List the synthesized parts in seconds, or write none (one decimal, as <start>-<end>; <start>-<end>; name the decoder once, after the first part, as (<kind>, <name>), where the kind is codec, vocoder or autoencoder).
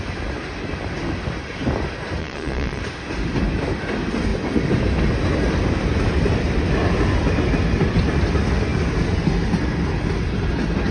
2.2-2.8 (vocoder, Vocos)